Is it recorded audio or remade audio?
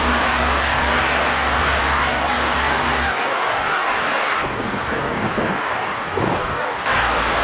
remade